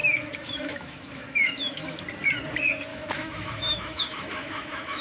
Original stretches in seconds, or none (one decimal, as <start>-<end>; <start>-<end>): 2.0-2.9